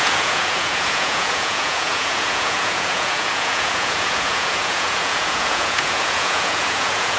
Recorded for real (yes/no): no